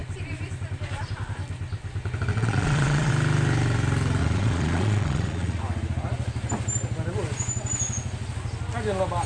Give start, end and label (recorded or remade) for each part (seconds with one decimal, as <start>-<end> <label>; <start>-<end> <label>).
0.0-2.3 recorded; 2.3-3.1 remade; 3.1-4.2 recorded; 4.2-5.6 remade; 5.6-9.3 recorded

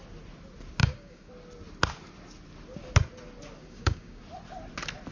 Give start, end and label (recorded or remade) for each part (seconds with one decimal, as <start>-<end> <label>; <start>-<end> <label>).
0.0-0.8 recorded; 0.8-1.3 remade; 1.3-3.6 recorded; 3.6-4.2 remade; 4.2-5.1 recorded

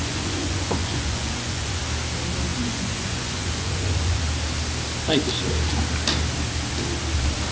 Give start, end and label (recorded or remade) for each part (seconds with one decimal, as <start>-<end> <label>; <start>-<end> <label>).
0.0-1.8 remade; 1.8-2.5 recorded; 2.5-4.2 remade; 4.2-7.5 recorded

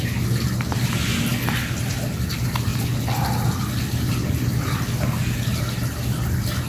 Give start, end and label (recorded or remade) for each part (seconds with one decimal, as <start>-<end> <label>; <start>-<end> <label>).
0.0-6.7 recorded

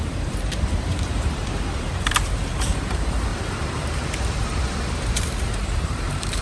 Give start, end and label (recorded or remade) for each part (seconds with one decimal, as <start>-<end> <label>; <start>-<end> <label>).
0.0-6.4 remade

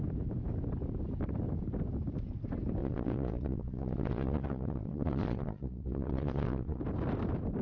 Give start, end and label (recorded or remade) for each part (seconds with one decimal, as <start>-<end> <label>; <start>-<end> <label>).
0.0-2.8 recorded; 2.8-6.8 remade; 6.8-7.6 recorded

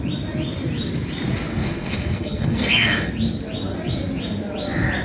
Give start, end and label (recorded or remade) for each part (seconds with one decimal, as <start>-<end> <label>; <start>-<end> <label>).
0.0-1.5 recorded; 1.5-3.1 remade; 3.1-5.0 recorded

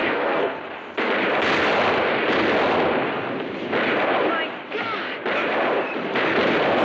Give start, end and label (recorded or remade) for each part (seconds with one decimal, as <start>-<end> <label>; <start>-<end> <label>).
0.0-0.6 remade; 0.6-6.8 recorded